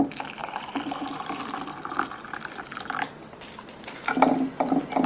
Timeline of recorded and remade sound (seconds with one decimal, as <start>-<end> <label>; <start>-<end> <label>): 0.0-0.4 recorded; 0.4-2.6 remade; 2.6-5.1 recorded